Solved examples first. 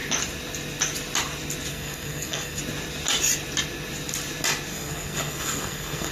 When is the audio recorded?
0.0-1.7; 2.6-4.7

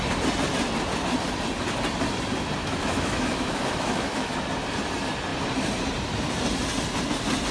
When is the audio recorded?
0.0-2.6; 4.3-7.5

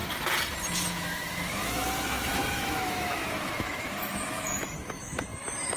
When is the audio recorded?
0.0-0.9